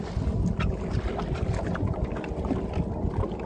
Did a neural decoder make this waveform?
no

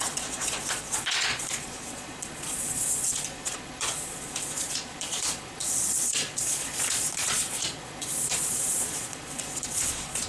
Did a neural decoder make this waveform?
yes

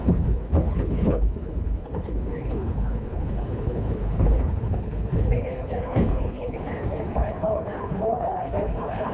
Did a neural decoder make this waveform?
yes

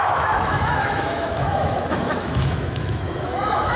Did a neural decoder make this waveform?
yes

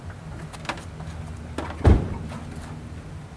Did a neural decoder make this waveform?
no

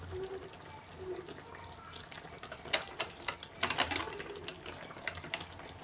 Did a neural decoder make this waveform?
no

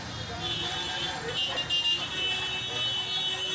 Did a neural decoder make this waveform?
no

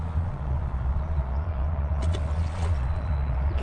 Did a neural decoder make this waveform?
yes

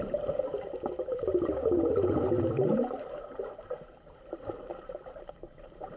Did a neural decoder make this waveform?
yes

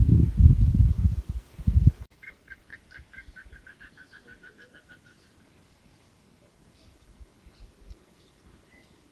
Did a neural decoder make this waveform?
yes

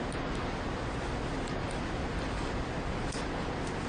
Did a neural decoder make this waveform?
no